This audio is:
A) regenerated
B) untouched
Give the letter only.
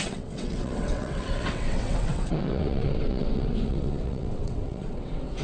A